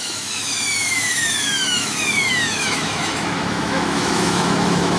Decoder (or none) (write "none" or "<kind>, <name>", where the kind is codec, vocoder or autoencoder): autoencoder, DAC-VAE